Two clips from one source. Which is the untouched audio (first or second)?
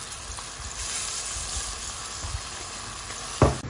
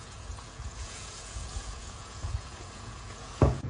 first